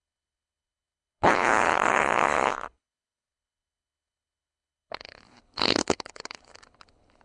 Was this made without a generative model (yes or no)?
no